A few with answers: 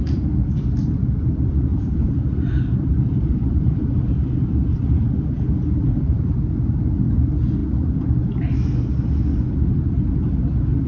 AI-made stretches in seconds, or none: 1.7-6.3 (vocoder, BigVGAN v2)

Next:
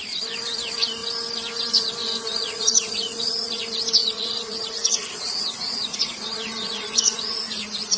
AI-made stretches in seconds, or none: 2.3-3.6 (vocoder, Vocos); 4.0-8.0

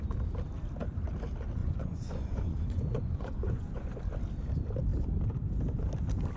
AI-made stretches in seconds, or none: 1.6-4.0 (vocoder, Vocos)

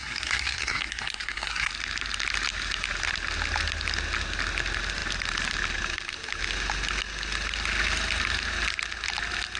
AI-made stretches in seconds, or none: 0.0-1.7 (codec, SNAC)

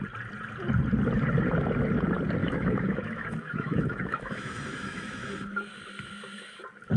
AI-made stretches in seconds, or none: 2.4-5.7 (autoencoder, DAC-VAE)

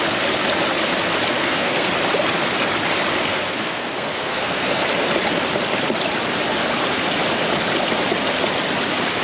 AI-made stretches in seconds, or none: 1.4-1.9 (codec, SNAC); 3.3-4.8

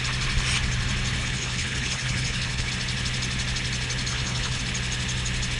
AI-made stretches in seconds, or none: 1.2-2.7 (codec, HILCodec); 4.1-4.6

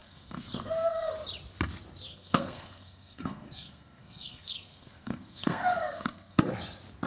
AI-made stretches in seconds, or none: 0.0-1.1 (codec, SNAC); 2.1-6.4